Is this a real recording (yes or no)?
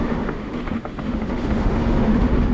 no